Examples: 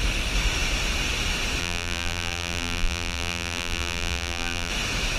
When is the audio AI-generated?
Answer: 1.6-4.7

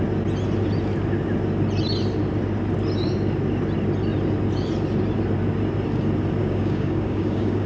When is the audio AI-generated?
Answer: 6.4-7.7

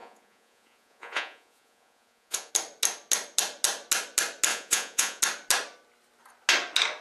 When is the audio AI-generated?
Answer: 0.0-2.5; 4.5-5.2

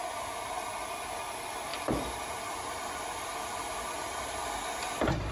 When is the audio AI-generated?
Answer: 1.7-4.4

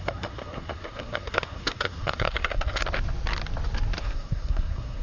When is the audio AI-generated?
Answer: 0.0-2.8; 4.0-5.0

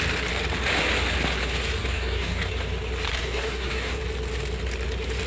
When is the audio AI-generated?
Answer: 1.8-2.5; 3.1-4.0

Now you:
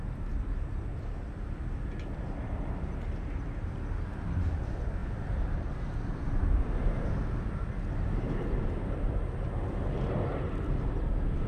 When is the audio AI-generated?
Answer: none

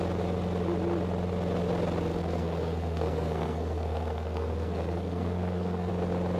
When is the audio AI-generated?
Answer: 2.1-5.9